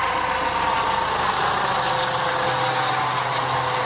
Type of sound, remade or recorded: recorded